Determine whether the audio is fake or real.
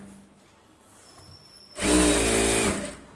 real